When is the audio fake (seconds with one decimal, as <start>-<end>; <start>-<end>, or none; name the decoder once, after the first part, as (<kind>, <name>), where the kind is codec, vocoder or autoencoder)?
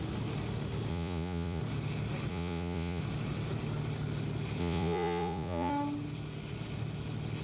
0.9-1.6 (vocoder, Vocos); 2.3-3.0; 4.6-5.7